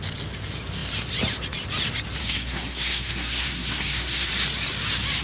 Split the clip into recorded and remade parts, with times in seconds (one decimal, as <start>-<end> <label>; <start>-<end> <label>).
0.0-2.2 recorded; 2.2-4.3 remade; 4.3-5.2 recorded